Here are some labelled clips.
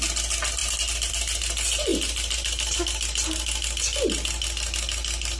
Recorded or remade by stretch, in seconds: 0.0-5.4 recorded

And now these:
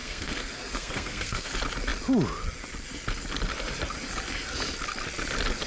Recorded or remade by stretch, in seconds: 0.0-1.5 remade; 1.5-5.7 recorded

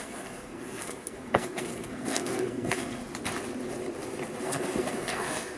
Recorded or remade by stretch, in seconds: 0.0-3.0 remade; 3.0-4.4 recorded; 4.4-5.6 remade

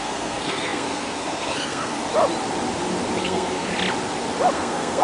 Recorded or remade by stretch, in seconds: 0.0-2.0 remade; 2.0-3.2 recorded; 3.2-3.7 remade; 3.7-4.5 recorded; 4.5-5.0 remade